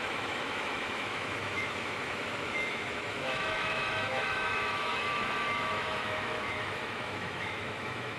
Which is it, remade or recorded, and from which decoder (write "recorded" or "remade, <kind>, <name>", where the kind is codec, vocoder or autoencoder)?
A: remade, autoencoder, DAC-VAE